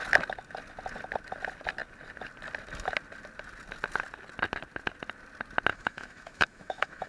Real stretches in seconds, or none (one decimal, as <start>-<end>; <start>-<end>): 0.0-5.7